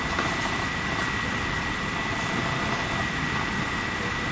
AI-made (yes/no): no